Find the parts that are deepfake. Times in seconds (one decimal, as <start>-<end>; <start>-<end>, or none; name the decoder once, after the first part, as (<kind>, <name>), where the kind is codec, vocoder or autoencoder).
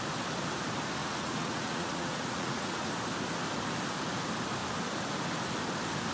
1.0-2.9 (vocoder, Vocos)